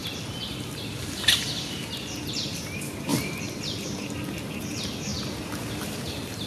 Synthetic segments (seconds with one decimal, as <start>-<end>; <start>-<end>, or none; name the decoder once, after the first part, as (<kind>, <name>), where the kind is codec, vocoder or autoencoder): 0.0-0.7 (vocoder, BigVGAN v2); 3.1-4.6